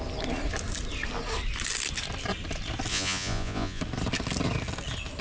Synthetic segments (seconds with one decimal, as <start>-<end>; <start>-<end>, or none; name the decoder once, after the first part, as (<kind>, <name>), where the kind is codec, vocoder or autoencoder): 2.9-3.8 (vocoder, Vocos)